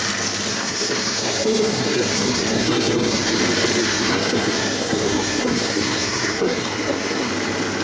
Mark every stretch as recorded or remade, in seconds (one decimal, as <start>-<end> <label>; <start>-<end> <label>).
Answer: 0.0-0.5 recorded; 0.5-3.4 remade; 3.4-3.8 recorded; 3.8-7.3 remade; 7.3-7.8 recorded